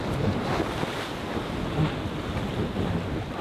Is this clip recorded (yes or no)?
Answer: yes